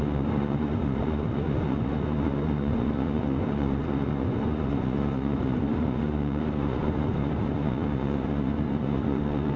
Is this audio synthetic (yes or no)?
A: yes